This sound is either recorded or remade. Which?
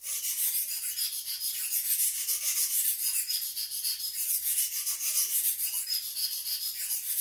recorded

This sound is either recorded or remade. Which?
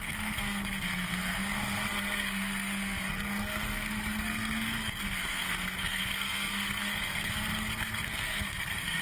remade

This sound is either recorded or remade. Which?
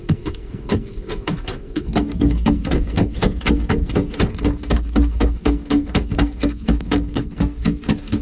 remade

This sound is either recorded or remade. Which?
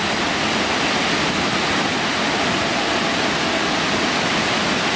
recorded